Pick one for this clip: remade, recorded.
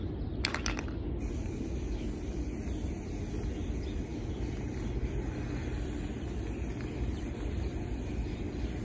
recorded